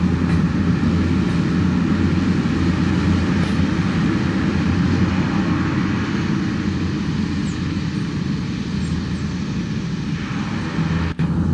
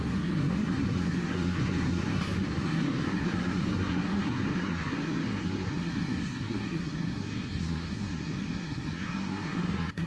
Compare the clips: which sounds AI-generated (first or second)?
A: second